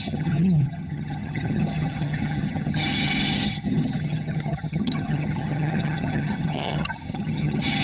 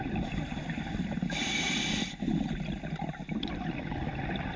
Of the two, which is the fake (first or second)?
first